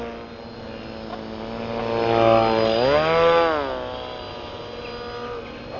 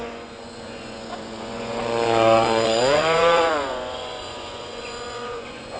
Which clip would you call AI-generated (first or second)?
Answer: second